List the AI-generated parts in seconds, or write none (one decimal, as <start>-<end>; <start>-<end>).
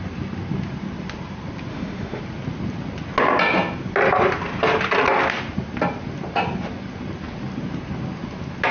1.7-2.2